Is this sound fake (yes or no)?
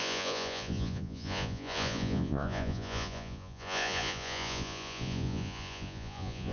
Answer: yes